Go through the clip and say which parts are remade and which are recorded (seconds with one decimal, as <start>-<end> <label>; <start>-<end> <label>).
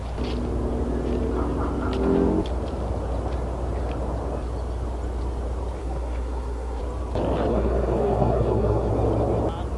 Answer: 0.0-5.8 recorded; 5.8-6.8 remade; 6.8-7.5 recorded; 7.5-8.9 remade; 8.9-9.8 recorded